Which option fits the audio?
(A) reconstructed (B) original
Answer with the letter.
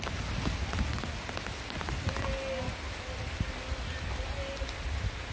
B